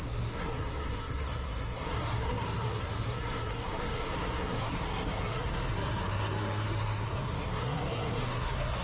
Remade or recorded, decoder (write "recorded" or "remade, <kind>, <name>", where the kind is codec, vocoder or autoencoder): remade, codec, SNAC